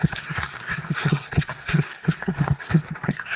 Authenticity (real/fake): fake